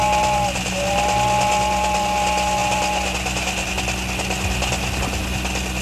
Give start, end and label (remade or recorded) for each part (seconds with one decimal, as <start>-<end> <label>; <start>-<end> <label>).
0.0-5.8 recorded